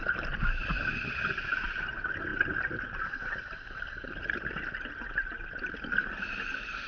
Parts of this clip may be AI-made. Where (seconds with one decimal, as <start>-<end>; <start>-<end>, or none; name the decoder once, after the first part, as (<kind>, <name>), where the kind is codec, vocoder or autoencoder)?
none